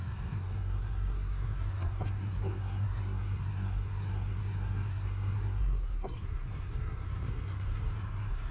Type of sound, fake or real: fake